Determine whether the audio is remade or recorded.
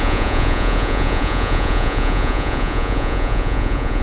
remade